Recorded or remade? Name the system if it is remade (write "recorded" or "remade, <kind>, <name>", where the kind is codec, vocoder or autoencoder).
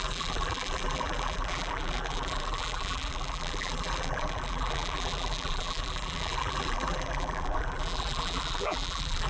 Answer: remade, vocoder, BigVGAN v2